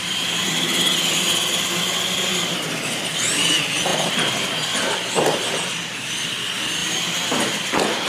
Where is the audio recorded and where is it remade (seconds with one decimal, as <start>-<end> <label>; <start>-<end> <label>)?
0.0-8.1 recorded

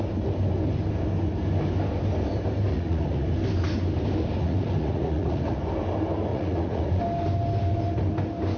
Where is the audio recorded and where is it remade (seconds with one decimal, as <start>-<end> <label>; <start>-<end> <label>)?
0.0-2.7 recorded; 2.7-3.3 remade; 3.3-4.4 recorded; 4.4-5.6 remade; 5.6-6.3 recorded; 6.3-7.0 remade; 7.0-8.6 recorded

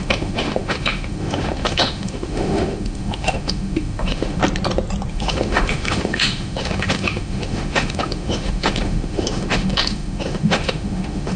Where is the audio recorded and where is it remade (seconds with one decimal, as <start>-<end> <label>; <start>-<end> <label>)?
0.0-4.4 remade; 4.4-5.1 recorded; 5.1-11.4 remade

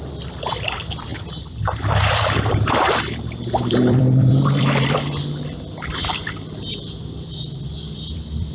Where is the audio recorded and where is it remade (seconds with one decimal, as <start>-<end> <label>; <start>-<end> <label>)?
0.0-8.5 remade

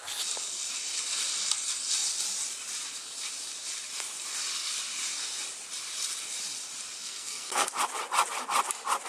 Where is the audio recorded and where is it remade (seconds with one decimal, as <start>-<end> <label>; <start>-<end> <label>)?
0.0-7.0 recorded; 7.0-7.7 remade; 7.7-9.1 recorded

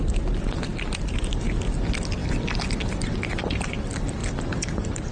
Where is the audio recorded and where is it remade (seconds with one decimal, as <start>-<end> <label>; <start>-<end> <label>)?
0.0-2.2 recorded; 2.2-3.2 remade; 3.2-5.1 recorded

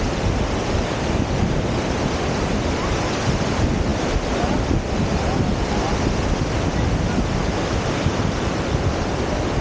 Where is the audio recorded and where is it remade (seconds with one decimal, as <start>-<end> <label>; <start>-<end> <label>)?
0.0-9.6 recorded

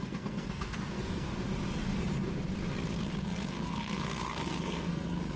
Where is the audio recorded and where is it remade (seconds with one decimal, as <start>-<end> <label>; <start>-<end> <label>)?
0.0-1.3 remade; 1.3-3.2 recorded; 3.2-5.4 remade